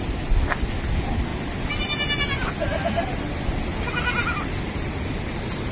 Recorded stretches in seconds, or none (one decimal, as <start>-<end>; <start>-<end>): 0.0-5.7